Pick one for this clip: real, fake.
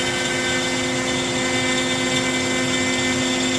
real